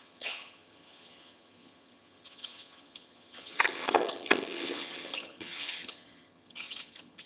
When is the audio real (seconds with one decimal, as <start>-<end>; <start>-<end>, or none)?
none